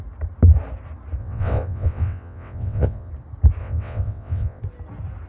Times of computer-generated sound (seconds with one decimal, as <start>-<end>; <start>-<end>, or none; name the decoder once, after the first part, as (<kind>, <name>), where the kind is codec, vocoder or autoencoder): 1.2-3.1 (vocoder, WaveNeXt); 3.6-4.6